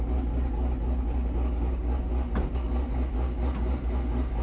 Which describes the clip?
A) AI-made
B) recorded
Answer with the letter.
B